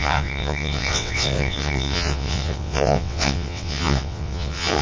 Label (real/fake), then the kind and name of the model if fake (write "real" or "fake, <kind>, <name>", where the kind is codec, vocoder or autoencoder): fake, vocoder, WaveNeXt